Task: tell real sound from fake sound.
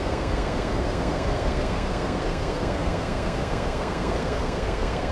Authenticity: fake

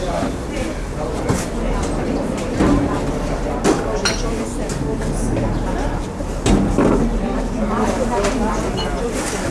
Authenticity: real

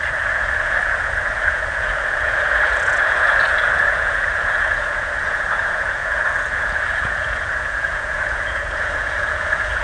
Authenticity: fake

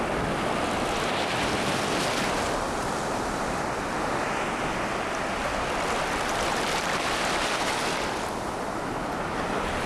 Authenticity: real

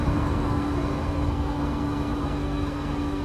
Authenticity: fake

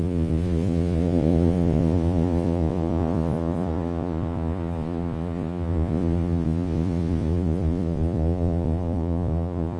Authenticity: fake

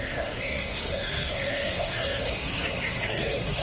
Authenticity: fake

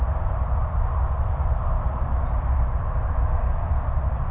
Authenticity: real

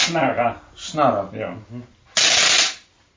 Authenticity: real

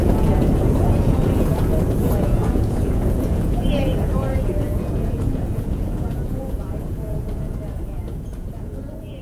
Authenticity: fake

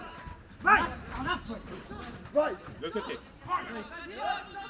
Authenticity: real